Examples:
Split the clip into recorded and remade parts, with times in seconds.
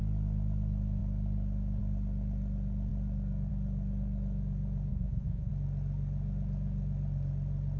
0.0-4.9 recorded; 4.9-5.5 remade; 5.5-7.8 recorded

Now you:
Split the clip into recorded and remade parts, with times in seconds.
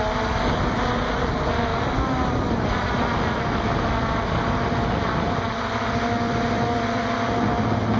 0.0-8.0 recorded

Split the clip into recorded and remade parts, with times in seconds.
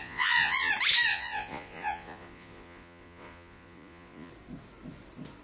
0.0-0.7 remade; 0.7-1.1 recorded; 1.1-4.3 remade; 4.3-5.4 recorded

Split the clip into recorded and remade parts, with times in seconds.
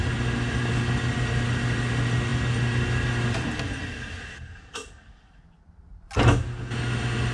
0.0-7.3 recorded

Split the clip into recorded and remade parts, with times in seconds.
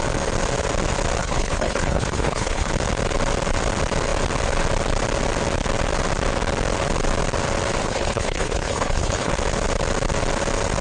0.0-1.2 recorded; 1.2-2.7 remade; 2.7-7.8 recorded; 7.8-9.3 remade; 9.3-10.8 recorded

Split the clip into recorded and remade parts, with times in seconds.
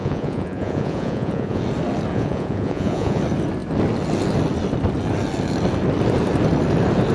0.0-1.6 remade; 1.6-2.1 recorded; 2.1-3.2 remade; 3.2-7.1 recorded